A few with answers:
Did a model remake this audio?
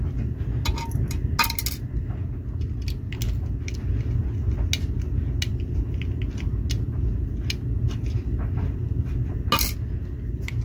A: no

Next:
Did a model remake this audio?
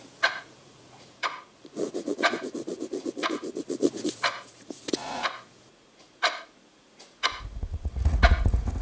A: yes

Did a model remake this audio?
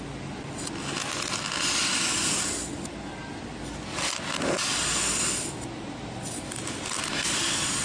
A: no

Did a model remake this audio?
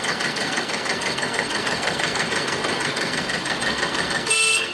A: yes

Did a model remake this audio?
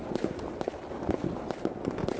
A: no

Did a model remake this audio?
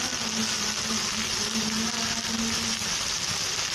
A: no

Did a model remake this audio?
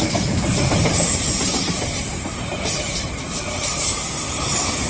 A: yes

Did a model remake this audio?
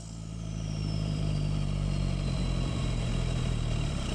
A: yes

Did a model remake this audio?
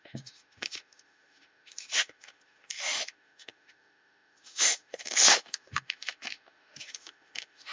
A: yes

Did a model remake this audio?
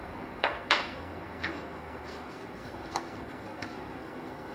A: yes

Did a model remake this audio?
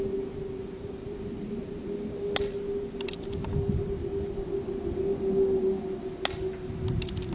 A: no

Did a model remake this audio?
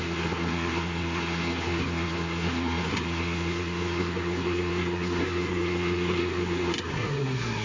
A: yes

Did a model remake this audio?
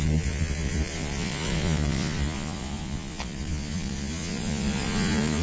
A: yes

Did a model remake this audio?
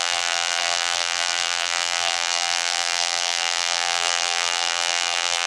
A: yes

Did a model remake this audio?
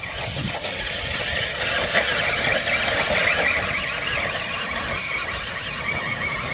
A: no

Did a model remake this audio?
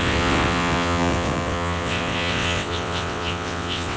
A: yes